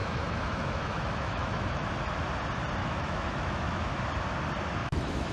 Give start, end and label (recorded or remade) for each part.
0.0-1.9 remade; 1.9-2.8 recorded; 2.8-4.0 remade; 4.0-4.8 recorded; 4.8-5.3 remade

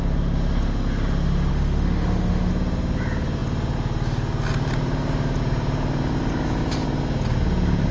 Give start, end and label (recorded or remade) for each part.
0.0-1.5 recorded; 1.5-2.5 remade; 2.5-7.9 recorded

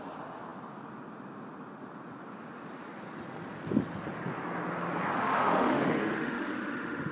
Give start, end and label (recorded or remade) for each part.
0.0-5.2 recorded; 5.2-7.1 remade

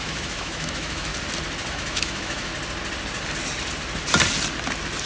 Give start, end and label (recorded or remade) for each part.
0.0-1.1 remade; 1.1-1.7 recorded; 1.7-2.5 remade; 2.5-5.1 recorded

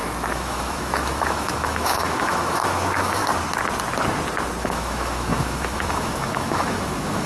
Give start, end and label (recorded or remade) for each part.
0.0-3.2 remade; 3.2-4.6 recorded; 4.6-7.3 remade

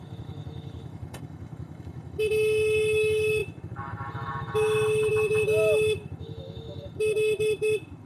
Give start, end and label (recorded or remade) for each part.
0.0-8.1 remade